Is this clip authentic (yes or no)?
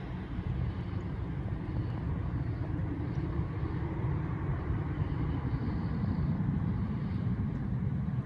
no